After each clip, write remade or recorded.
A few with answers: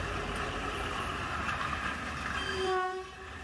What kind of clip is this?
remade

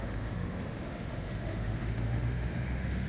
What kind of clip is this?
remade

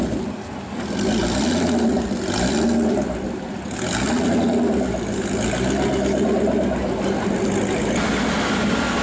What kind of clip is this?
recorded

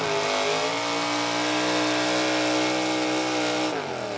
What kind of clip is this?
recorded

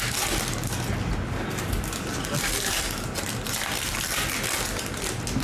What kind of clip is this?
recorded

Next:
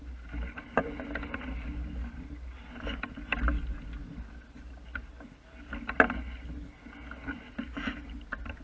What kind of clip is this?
recorded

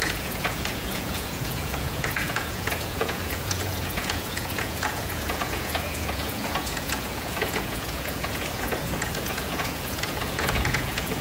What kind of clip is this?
remade